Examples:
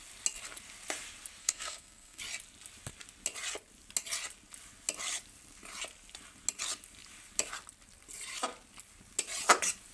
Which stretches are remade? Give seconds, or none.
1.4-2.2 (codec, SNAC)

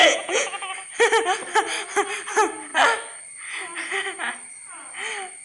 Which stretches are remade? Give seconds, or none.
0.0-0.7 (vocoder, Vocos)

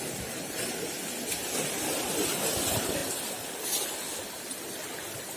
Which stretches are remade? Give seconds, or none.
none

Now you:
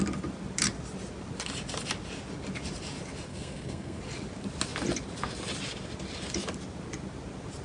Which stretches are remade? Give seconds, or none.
3.3-4.0 (codec, SNAC)

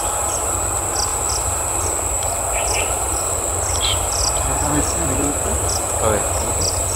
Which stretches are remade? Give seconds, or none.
1.1-1.6 (vocoder, BigVGAN v2); 3.9-6.6